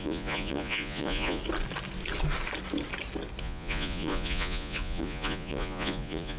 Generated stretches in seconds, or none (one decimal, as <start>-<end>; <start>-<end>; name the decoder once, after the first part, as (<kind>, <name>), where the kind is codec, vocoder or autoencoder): 0.0-1.4 (vocoder, Vocos); 3.4-6.4